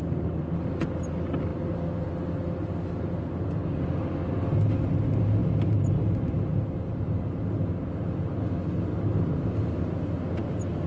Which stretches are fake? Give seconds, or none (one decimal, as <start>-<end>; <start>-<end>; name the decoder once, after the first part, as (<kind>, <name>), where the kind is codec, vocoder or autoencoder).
none

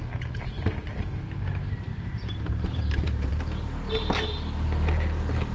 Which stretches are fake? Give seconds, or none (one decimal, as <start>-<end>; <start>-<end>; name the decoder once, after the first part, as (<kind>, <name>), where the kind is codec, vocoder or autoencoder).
1.9-3.3 (vocoder, BigVGAN v2)